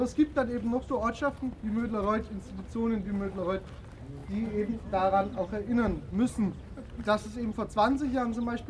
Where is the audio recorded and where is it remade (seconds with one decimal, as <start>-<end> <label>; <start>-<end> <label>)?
0.0-8.7 recorded